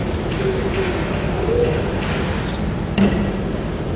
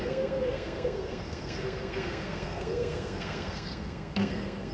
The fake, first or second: second